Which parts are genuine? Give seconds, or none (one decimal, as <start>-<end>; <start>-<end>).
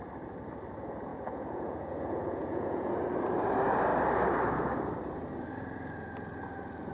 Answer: 0.0-1.1; 2.9-6.9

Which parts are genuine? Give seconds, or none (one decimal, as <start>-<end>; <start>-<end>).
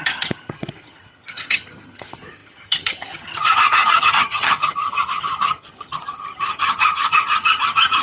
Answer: none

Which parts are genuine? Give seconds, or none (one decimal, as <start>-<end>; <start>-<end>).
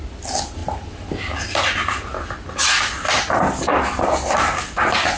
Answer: 0.0-5.2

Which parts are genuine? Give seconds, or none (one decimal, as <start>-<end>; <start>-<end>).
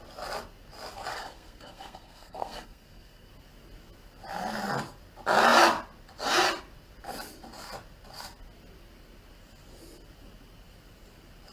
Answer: 0.0-1.1; 3.3-11.5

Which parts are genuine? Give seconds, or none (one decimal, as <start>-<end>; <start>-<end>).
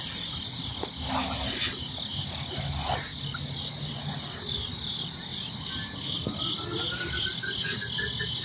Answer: 0.0-8.4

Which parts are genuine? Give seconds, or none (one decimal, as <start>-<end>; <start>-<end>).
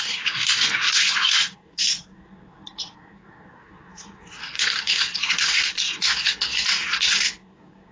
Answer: none